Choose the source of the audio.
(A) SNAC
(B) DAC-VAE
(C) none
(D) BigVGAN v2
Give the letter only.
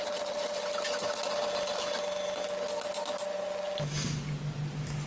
C